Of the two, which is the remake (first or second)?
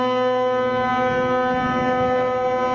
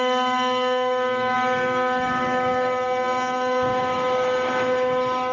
second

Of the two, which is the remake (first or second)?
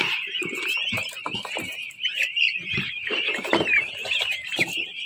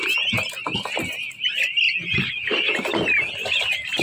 first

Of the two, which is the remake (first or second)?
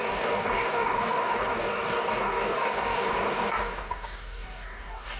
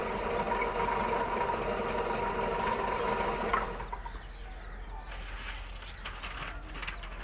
first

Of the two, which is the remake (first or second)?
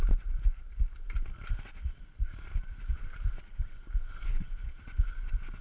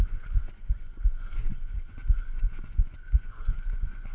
second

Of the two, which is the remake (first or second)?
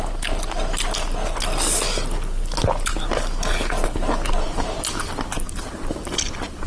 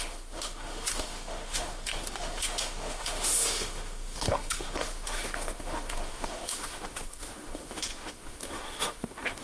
second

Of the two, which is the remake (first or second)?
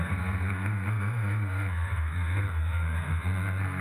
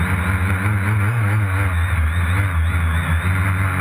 first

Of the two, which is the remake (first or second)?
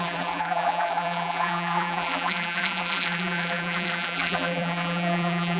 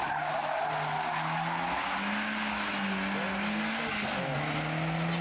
first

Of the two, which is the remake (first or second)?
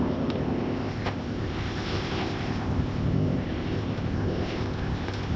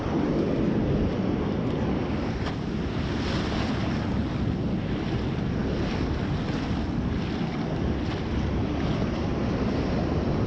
first